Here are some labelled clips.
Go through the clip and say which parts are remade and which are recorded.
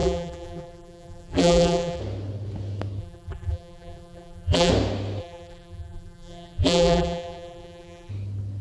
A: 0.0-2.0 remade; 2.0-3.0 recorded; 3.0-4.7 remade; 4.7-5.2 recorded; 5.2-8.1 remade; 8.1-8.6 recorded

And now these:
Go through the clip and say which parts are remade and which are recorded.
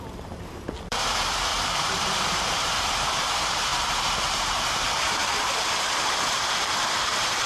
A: 0.0-1.5 remade; 1.5-2.2 recorded; 2.2-5.2 remade; 5.2-6.3 recorded; 6.3-7.5 remade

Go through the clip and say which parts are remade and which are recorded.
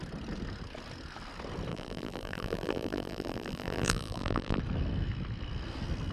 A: 0.0-1.7 recorded; 1.7-4.6 remade; 4.6-6.1 recorded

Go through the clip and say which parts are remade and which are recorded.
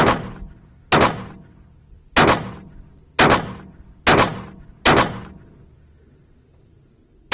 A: 0.0-7.3 recorded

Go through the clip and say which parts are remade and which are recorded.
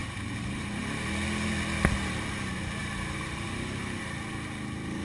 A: 0.0-0.8 remade; 0.8-2.8 recorded; 2.8-4.0 remade; 4.0-5.0 recorded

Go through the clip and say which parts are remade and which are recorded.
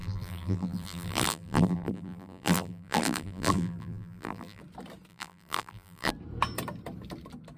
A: 0.0-4.6 remade; 4.6-5.1 recorded; 5.1-6.1 remade; 6.1-7.6 recorded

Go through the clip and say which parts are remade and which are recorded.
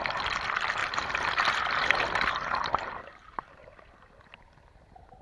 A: 0.0-0.8 recorded; 0.8-3.9 remade; 3.9-5.2 recorded